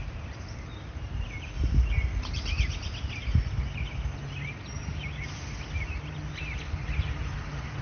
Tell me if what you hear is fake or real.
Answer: real